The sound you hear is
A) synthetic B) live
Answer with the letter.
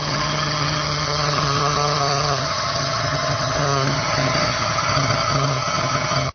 A